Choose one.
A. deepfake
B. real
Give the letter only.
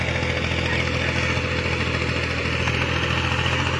B